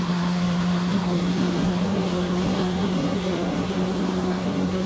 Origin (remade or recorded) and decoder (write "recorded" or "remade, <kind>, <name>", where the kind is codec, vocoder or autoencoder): remade, codec, SNAC